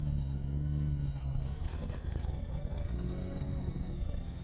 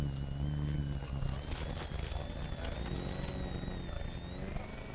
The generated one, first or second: first